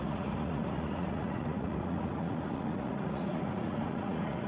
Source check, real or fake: fake